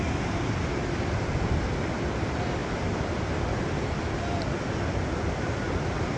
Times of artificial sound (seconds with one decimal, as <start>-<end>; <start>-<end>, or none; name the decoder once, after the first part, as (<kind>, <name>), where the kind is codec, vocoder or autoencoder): none